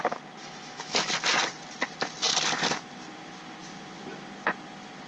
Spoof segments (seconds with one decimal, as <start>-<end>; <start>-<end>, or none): 0.4-1.1